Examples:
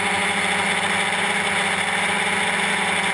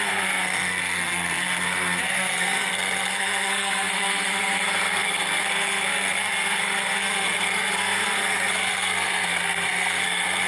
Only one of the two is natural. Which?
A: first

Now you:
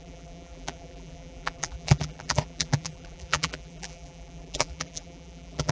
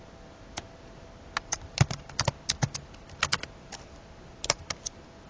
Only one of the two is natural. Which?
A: second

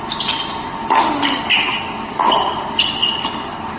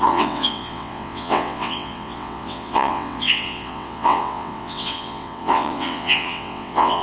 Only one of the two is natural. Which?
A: first